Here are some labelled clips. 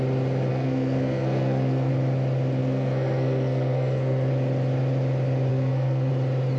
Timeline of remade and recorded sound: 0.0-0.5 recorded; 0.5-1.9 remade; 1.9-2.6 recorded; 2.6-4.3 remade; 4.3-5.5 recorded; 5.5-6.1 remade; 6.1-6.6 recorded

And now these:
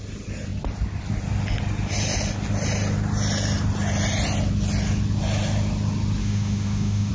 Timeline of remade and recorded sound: 0.0-6.2 recorded; 6.2-7.1 remade

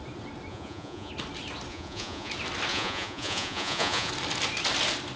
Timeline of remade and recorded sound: 0.0-0.5 recorded; 0.5-1.1 remade; 1.1-1.7 recorded; 1.7-2.3 remade; 2.3-2.7 recorded; 2.7-4.1 remade; 4.1-5.2 recorded

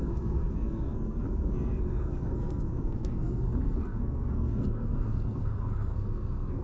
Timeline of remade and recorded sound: 0.0-6.6 remade